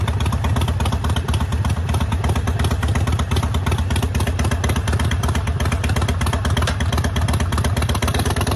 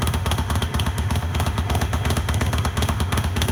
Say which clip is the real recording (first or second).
first